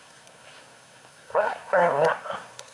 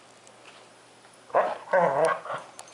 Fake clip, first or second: first